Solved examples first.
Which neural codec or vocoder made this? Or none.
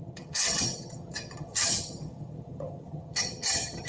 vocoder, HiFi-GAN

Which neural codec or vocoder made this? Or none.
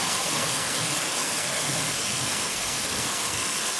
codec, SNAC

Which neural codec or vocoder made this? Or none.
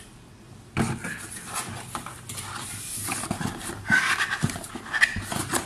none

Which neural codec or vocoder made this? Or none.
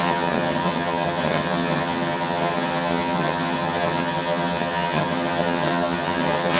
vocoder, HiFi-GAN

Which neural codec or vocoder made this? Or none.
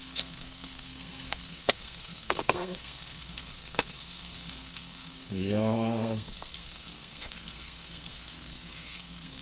codec, SNAC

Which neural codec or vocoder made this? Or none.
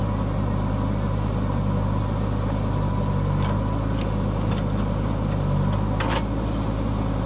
none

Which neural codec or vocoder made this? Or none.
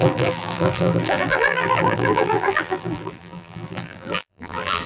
vocoder, BigVGAN v2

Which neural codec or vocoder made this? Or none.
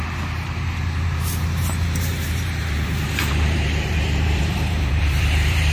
vocoder, BigVGAN v2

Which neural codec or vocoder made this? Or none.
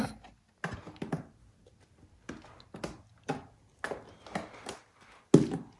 none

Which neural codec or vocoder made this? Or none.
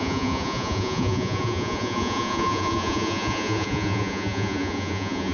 vocoder, Vocos